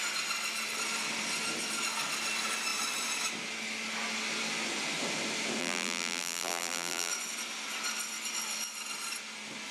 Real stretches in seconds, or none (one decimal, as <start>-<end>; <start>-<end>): 0.0-5.6; 7.1-9.7